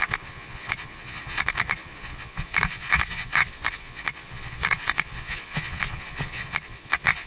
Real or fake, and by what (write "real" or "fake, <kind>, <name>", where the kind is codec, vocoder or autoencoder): fake, vocoder, Vocos